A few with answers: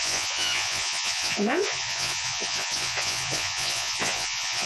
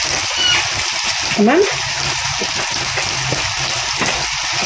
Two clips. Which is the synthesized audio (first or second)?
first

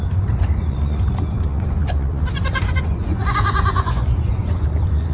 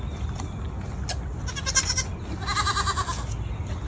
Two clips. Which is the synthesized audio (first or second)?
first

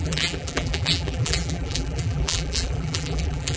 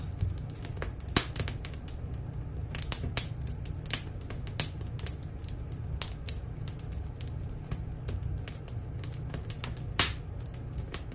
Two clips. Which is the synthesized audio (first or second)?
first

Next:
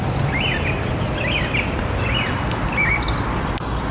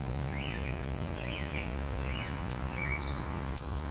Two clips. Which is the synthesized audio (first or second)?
second